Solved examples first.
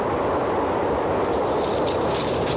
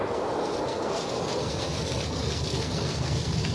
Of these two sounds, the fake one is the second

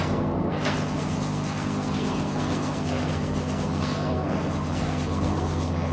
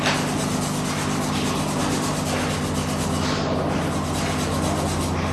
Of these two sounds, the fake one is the first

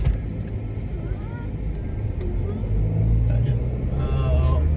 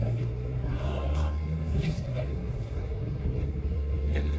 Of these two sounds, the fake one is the second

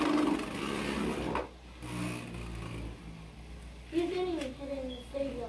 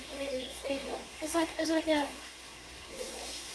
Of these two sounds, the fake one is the second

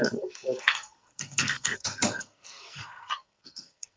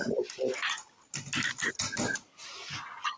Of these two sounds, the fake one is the first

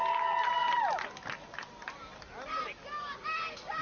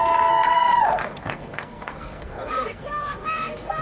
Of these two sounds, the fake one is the second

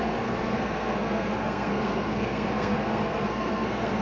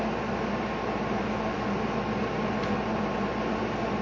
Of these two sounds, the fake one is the first